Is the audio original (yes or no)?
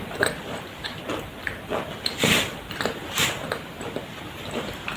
no